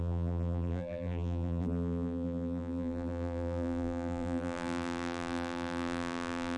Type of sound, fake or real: fake